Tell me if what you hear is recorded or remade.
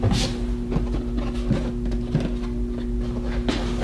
recorded